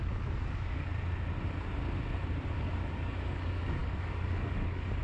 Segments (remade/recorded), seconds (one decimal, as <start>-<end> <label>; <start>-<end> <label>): 0.0-0.9 remade; 0.9-2.5 recorded; 2.5-5.0 remade